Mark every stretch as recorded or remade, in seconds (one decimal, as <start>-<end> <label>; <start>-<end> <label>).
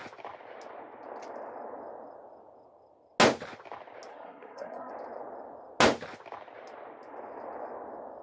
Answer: 0.0-4.1 recorded; 4.1-4.9 remade; 4.9-8.2 recorded